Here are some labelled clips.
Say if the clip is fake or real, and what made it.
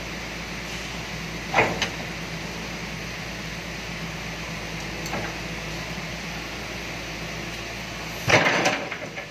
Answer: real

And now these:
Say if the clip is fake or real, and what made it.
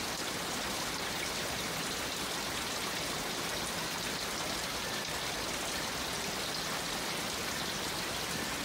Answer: real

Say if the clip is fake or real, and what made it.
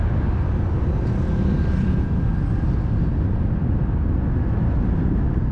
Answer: real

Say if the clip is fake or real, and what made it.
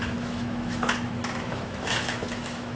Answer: fake, autoencoder, DAC-VAE